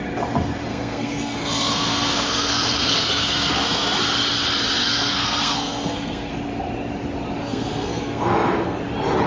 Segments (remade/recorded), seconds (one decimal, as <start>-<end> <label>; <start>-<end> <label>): 0.0-0.7 recorded; 0.7-4.0 remade; 4.0-4.8 recorded; 4.8-6.3 remade; 6.3-7.4 recorded; 7.4-8.8 remade; 8.8-9.3 recorded